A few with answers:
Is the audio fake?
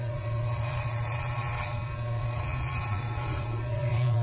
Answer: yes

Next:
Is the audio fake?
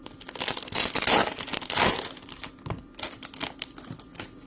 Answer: no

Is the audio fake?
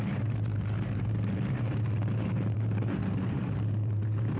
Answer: yes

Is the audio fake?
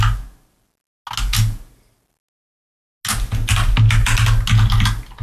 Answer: no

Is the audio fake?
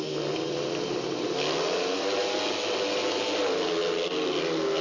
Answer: no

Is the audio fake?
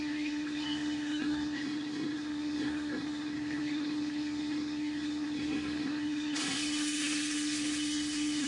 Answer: yes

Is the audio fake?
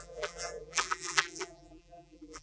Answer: yes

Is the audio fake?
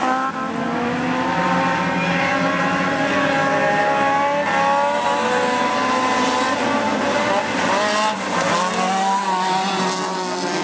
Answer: no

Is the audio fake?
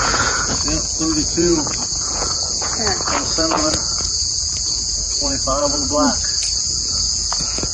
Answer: yes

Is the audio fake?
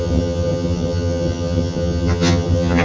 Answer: yes